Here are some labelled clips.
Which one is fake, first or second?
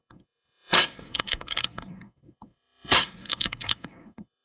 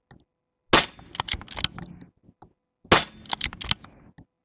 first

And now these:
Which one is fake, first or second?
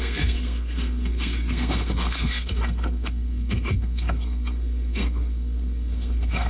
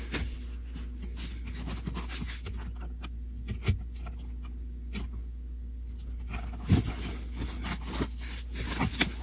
first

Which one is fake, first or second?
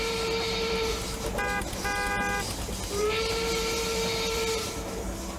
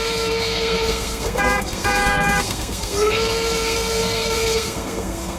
second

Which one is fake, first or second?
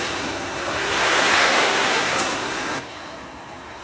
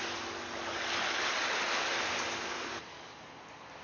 first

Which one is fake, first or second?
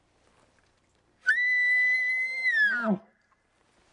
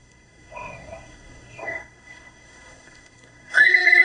second